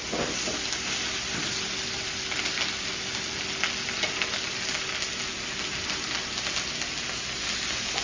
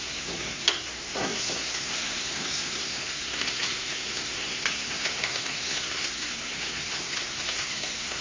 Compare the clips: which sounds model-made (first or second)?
second